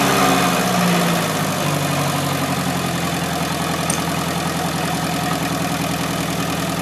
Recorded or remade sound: recorded